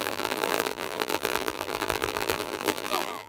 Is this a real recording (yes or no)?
no